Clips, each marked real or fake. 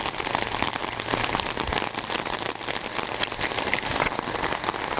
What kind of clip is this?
real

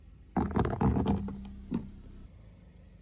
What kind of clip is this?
real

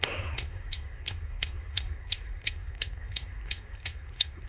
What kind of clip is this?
fake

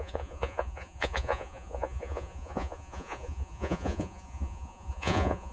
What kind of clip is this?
fake